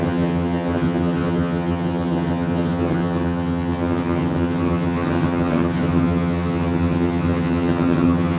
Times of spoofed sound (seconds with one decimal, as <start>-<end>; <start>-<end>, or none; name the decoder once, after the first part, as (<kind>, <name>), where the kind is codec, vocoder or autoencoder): 0.0-8.4 (vocoder, HiFi-GAN)